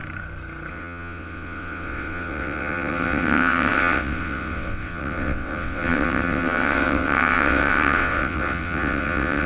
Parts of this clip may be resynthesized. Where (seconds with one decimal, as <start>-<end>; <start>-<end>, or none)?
0.7-9.5